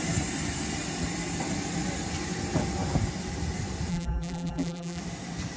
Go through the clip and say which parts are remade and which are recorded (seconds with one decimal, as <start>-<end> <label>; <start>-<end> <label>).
0.0-3.9 recorded; 3.9-5.0 remade; 5.0-5.6 recorded